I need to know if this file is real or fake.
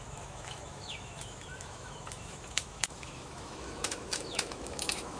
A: fake